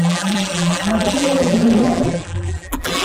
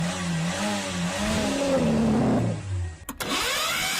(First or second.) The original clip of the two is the second